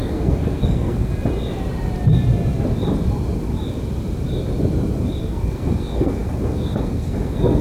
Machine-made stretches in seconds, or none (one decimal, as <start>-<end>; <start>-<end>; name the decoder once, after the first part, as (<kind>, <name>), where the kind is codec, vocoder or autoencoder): 0.0-1.1 (codec, SNAC); 5.2-7.6